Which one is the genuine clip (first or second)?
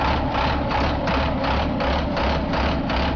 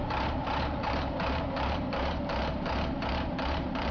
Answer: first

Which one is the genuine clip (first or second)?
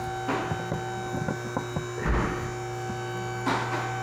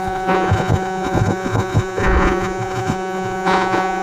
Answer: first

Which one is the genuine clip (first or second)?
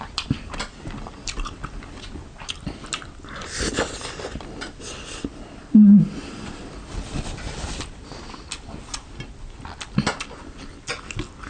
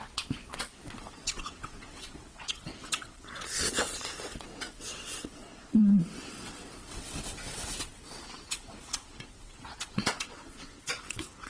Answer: first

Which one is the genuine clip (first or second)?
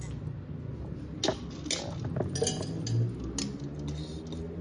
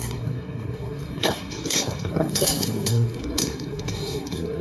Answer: first